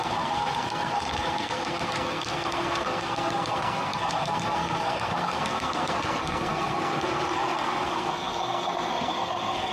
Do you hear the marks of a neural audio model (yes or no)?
yes